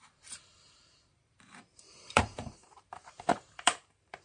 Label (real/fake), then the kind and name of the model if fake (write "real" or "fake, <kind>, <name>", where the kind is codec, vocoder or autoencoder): fake, vocoder, BigVGAN v2